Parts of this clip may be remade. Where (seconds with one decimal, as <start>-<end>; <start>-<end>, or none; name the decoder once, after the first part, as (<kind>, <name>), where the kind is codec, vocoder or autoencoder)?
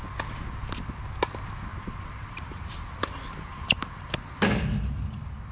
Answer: 1.7-2.7 (vocoder, BigVGAN v2); 3.5-4.1